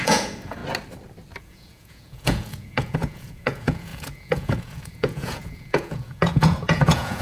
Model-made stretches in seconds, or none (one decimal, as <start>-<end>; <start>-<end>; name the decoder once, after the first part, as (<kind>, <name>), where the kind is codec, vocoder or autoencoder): 0.0-0.6 (vocoder, Vocos); 1.4-7.2